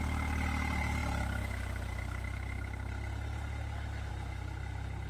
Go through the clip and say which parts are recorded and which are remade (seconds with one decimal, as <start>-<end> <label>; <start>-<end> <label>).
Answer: 0.0-5.1 recorded